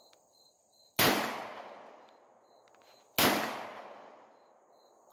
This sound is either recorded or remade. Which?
recorded